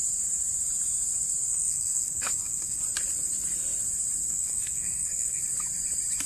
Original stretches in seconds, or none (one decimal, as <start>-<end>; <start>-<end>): 0.0-1.5; 2.8-4.2; 5.4-6.3